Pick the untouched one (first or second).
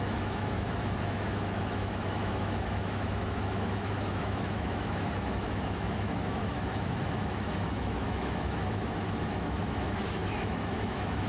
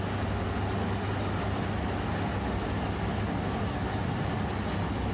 second